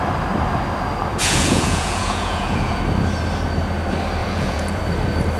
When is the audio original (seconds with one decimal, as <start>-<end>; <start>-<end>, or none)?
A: 0.0-1.2; 2.8-4.2; 4.8-5.4